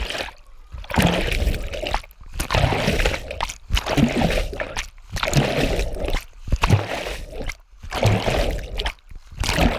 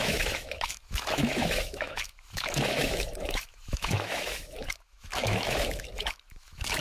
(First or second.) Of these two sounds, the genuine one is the first